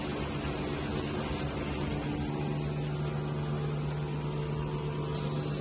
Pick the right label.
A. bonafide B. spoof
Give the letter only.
A